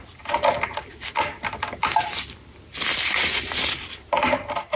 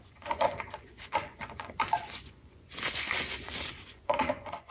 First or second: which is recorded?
first